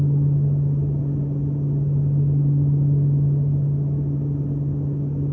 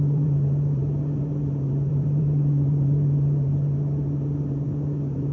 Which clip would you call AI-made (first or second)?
second